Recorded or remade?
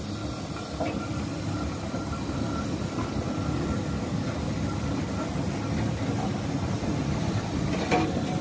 recorded